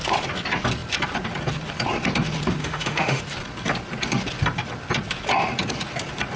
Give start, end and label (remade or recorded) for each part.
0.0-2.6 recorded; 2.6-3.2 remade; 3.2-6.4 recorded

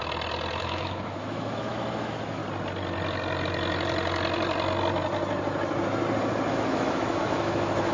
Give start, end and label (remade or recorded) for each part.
0.0-0.6 recorded; 0.6-2.4 remade; 2.4-6.5 recorded; 6.5-7.9 remade

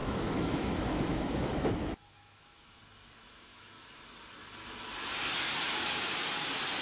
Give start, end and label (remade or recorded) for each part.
0.0-2.8 remade; 2.8-3.5 recorded; 3.5-4.0 remade; 4.0-6.8 recorded

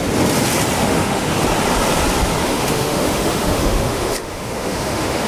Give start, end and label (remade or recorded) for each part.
0.0-0.8 recorded; 0.8-1.3 remade; 1.3-2.5 recorded; 2.5-5.3 remade

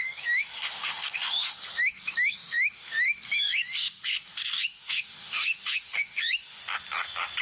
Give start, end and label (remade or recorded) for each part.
0.0-6.6 remade; 6.6-7.4 recorded

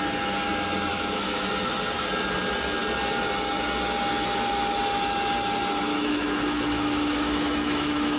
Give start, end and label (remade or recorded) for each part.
0.0-0.9 recorded; 0.9-1.5 remade; 1.5-5.9 recorded; 5.9-8.2 remade